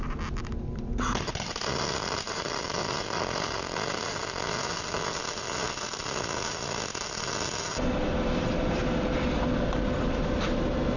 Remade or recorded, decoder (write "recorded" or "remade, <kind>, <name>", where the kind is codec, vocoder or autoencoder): recorded